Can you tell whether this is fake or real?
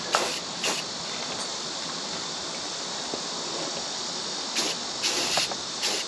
real